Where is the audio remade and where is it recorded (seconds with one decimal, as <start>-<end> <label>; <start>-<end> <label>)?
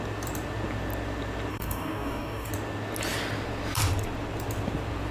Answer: 0.0-1.5 recorded; 1.5-2.5 remade; 2.5-5.1 recorded